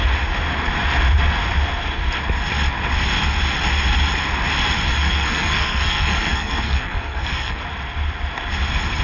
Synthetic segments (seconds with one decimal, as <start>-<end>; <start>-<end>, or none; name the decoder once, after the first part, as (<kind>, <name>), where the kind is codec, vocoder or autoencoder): 4.9-7.6 (codec, SNAC)